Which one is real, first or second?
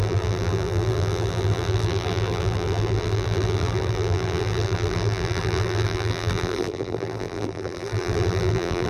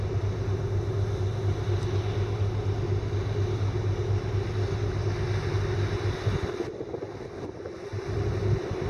second